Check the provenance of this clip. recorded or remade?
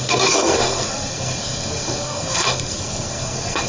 remade